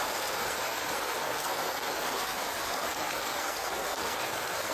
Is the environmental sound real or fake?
fake